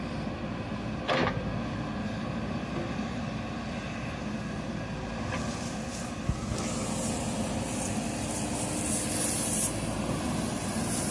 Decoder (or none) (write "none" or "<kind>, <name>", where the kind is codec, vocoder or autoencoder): none